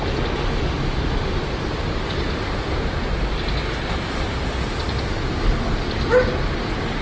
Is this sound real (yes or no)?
yes